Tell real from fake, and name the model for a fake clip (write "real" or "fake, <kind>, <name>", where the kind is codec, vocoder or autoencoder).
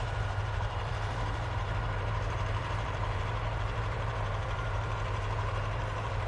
fake, vocoder, BigVGAN v2